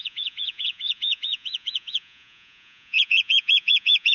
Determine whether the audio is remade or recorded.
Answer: remade